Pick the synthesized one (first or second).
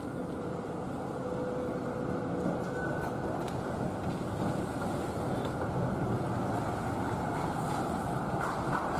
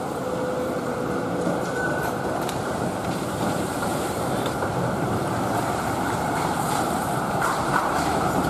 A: second